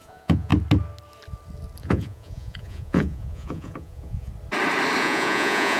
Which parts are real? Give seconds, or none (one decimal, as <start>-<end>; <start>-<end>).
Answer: 0.5-1.8; 4.3-5.0